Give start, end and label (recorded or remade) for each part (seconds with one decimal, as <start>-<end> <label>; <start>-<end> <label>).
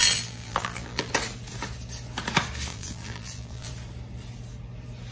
0.0-1.1 remade; 1.1-2.7 recorded; 2.7-3.7 remade; 3.7-5.1 recorded